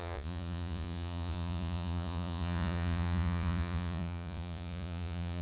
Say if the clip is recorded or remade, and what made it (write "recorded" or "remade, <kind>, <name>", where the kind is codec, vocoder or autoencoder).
remade, vocoder, Vocos